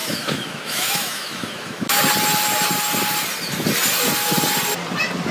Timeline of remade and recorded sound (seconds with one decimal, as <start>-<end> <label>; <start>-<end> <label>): 0.0-2.0 remade; 2.0-5.3 recorded